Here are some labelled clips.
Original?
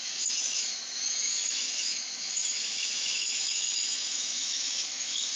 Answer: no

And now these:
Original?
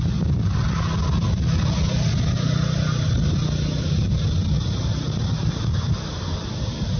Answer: yes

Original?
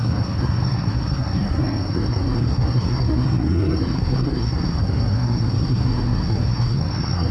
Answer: no